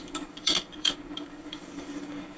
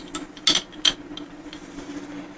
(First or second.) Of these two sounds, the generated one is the first